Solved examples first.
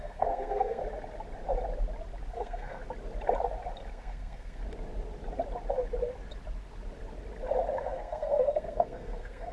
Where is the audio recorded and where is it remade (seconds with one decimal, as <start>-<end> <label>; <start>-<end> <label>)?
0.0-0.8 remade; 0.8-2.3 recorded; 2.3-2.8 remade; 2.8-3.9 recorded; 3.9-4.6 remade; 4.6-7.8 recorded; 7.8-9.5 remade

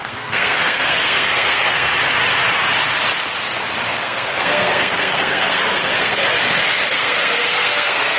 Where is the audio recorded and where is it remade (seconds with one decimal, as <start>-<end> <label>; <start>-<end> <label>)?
0.0-1.9 remade; 1.9-4.0 recorded; 4.0-6.2 remade; 6.2-6.9 recorded; 6.9-8.2 remade

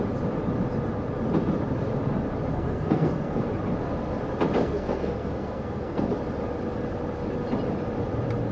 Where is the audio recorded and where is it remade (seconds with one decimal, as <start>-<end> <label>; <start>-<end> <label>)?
0.0-2.5 recorded; 2.5-3.5 remade; 3.5-4.6 recorded; 4.6-6.1 remade; 6.1-8.5 recorded

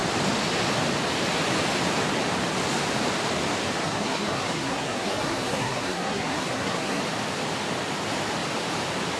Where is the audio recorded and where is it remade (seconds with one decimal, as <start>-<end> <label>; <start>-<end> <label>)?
0.0-3.8 recorded; 3.8-7.0 remade; 7.0-9.2 recorded

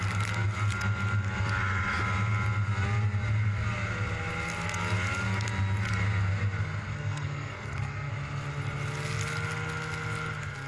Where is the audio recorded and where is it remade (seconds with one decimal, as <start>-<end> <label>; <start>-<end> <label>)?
0.0-6.9 recorded; 6.9-8.1 remade; 8.1-10.7 recorded